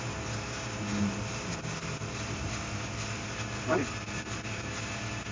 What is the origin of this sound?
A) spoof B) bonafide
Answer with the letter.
B